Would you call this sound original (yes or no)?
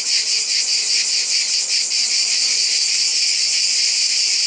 yes